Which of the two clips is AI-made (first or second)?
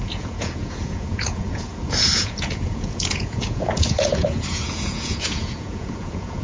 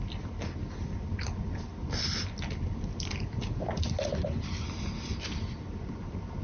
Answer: first